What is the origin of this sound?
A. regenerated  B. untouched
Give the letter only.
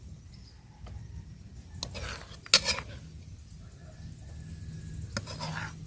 B